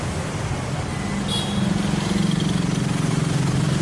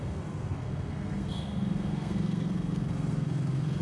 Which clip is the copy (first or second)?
second